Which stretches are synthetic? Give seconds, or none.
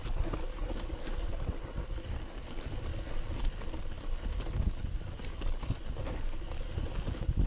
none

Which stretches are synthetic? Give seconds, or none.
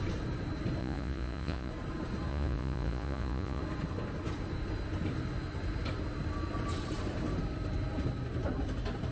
0.8-1.7 (vocoder, Vocos); 2.3-3.6